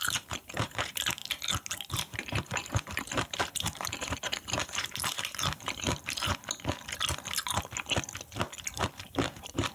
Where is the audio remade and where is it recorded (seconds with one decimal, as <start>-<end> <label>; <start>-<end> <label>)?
0.0-1.2 remade; 1.2-1.9 recorded; 1.9-6.3 remade; 6.3-8.8 recorded; 8.8-9.7 remade